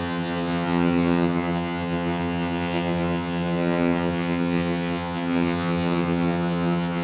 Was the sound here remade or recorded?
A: remade